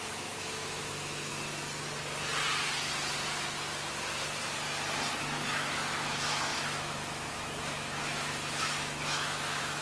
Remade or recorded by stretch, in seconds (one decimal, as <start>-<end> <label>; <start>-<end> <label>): 0.0-1.3 remade; 1.3-5.2 recorded; 5.2-9.8 remade